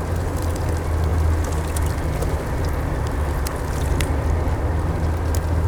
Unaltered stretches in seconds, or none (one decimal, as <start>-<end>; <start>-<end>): 0.0-5.7